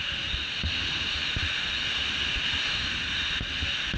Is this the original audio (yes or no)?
yes